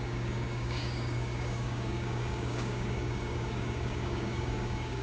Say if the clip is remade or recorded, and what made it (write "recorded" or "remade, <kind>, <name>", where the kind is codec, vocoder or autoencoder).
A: remade, codec, DAC